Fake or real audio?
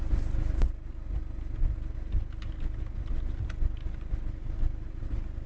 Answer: real